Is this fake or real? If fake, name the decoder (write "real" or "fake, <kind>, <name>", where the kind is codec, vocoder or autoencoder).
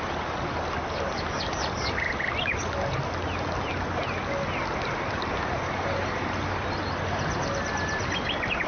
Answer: real